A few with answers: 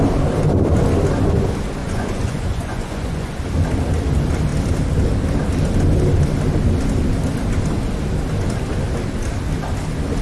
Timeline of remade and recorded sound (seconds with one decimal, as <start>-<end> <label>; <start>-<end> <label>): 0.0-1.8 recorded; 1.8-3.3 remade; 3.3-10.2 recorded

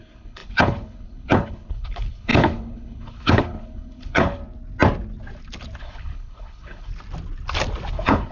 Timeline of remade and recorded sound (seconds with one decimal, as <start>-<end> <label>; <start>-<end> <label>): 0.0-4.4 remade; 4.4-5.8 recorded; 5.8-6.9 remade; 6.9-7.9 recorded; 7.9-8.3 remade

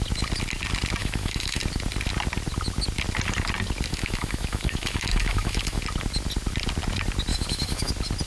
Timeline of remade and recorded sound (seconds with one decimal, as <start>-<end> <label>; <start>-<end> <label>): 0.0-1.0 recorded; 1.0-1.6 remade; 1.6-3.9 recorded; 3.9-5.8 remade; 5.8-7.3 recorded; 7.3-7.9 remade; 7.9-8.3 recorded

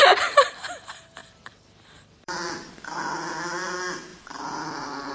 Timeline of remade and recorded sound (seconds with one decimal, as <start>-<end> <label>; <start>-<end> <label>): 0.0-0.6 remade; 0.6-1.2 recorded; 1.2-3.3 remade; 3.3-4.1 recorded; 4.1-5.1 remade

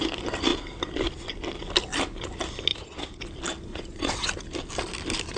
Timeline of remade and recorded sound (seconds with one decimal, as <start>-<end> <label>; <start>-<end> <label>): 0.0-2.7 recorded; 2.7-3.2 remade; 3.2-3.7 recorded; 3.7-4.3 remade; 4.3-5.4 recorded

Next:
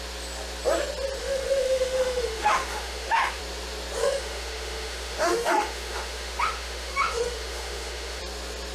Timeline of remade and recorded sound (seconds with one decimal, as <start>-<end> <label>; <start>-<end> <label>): 0.0-1.2 recorded; 1.2-3.4 remade; 3.4-4.0 recorded; 4.0-8.2 remade; 8.2-8.7 recorded

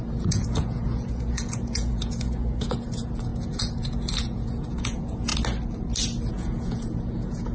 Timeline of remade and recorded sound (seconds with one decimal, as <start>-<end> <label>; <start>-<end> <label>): 0.0-5.3 remade; 5.3-6.3 recorded; 6.3-7.5 remade

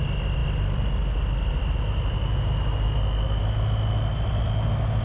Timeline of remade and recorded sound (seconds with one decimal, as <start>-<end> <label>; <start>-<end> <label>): 0.0-5.0 recorded